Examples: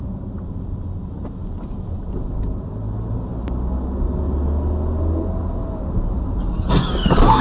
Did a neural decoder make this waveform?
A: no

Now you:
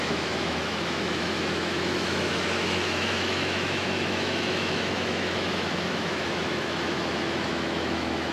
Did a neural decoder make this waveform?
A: yes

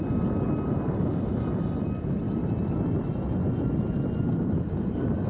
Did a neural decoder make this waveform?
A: no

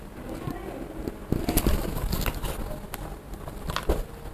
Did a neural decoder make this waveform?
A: no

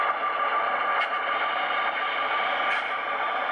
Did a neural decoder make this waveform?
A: no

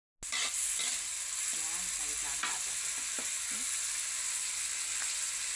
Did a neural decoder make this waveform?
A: no